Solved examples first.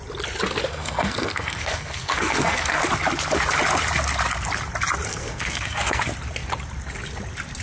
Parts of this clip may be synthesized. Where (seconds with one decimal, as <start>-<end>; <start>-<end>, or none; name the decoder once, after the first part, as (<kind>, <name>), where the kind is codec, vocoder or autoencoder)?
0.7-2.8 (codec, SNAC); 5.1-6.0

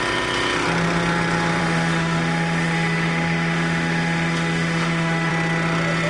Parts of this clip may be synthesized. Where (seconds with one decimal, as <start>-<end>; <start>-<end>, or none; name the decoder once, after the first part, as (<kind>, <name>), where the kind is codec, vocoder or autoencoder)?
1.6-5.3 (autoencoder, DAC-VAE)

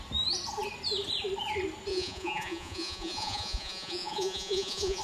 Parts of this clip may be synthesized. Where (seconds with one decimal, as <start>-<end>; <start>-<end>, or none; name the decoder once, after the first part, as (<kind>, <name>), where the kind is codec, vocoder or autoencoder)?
1.9-5.0 (vocoder, Vocos)